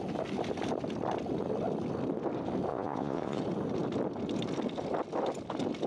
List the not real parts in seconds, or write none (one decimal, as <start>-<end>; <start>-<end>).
2.7-3.4